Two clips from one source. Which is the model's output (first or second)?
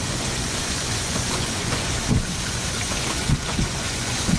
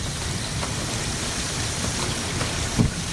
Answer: first